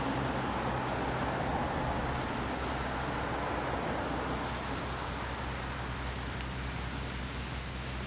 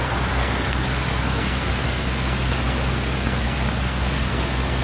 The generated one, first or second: second